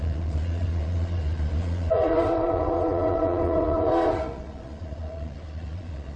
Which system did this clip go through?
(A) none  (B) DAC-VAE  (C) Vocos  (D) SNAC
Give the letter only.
C